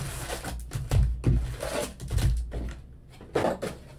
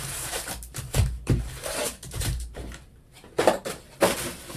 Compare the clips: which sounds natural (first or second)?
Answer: first